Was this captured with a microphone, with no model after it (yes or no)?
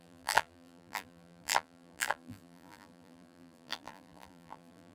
no